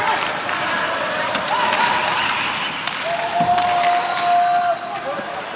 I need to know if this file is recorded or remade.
recorded